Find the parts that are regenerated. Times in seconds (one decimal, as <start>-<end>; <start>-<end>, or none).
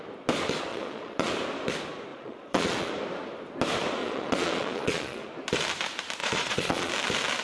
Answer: 0.7-1.3; 2.1-2.9; 4.0-5.3; 6.2-6.9